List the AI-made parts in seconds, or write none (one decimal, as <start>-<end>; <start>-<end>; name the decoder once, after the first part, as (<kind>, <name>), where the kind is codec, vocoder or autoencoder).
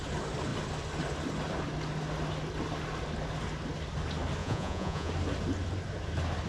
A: 4.4-5.1 (vocoder, Vocos)